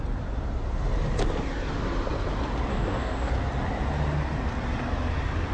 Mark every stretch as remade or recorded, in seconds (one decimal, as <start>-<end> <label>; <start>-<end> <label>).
0.0-2.7 recorded; 2.7-3.3 remade; 3.3-5.5 recorded